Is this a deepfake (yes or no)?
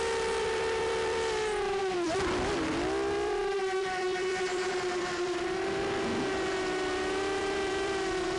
yes